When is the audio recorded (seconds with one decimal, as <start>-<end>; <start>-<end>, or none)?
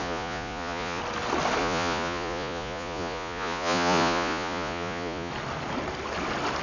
1.0-1.6; 5.3-6.6